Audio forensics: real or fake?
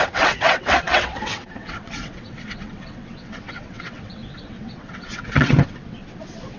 fake